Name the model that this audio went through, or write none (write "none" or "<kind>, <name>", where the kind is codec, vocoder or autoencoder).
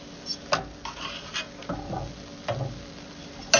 none